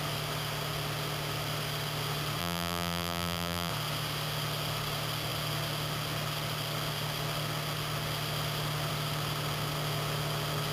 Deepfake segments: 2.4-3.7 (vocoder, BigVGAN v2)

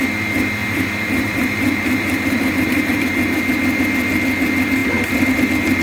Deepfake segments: 0.6-3.0 (vocoder, BigVGAN v2)

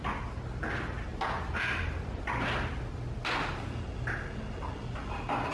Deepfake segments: none

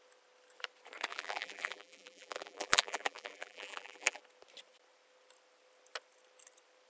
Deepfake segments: 1.1-4.2 (vocoder, BigVGAN v2)